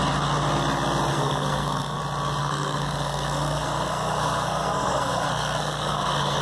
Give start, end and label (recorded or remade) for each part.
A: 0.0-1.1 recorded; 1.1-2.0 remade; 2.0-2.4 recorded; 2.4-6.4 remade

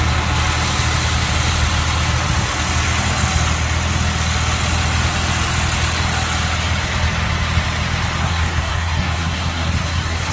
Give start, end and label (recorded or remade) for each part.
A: 0.0-8.2 recorded; 8.2-10.3 remade

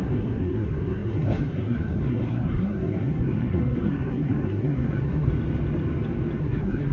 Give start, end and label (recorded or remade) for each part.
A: 0.0-5.3 remade; 5.3-6.4 recorded; 6.4-6.9 remade

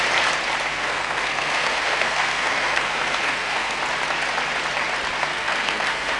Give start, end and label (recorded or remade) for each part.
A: 0.0-0.7 recorded; 0.7-3.8 remade; 3.8-5.2 recorded; 5.2-6.2 remade

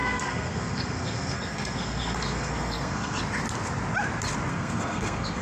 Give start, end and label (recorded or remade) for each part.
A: 0.0-3.2 remade; 3.2-4.5 recorded; 4.5-5.4 remade

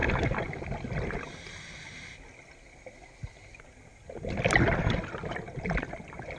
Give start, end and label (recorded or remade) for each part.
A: 0.0-6.4 recorded

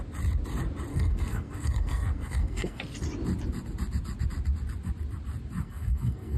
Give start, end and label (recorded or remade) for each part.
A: 0.0-0.9 recorded; 0.9-2.8 remade; 2.8-5.6 recorded; 5.6-6.4 remade

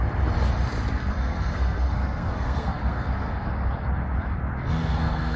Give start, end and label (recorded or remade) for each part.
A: 0.0-1.0 recorded; 1.0-3.5 remade; 3.5-4.8 recorded; 4.8-5.4 remade